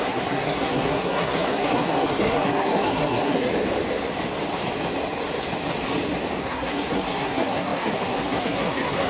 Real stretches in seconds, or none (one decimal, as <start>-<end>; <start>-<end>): 3.5-6.4